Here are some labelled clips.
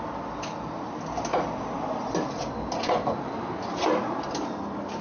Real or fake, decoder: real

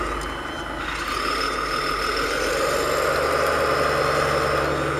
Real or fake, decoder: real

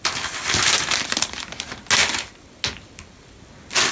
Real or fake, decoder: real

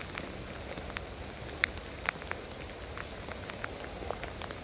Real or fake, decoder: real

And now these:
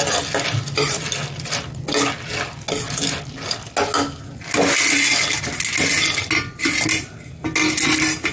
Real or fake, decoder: real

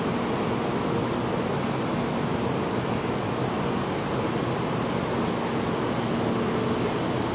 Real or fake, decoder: real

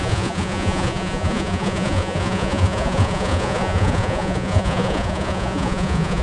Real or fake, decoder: fake, vocoder, Vocos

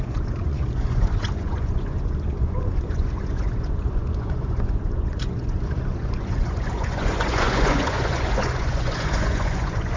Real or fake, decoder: fake, vocoder, Vocos